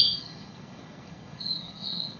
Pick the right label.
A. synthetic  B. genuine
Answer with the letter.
A